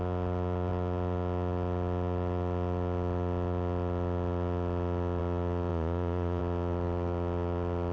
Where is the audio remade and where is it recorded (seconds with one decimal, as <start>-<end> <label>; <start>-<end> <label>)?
0.0-5.7 recorded; 5.7-6.4 remade; 6.4-7.9 recorded